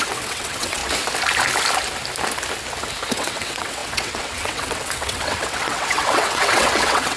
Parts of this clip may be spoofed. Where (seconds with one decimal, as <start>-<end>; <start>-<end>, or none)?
0.0-0.8; 3.1-7.2